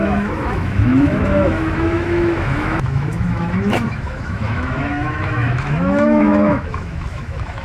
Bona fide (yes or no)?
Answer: no